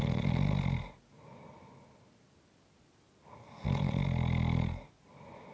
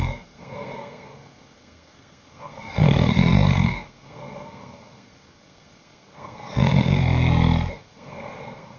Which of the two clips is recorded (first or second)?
first